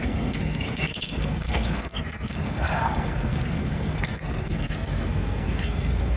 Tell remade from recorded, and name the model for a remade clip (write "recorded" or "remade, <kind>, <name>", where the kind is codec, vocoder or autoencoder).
remade, codec, SNAC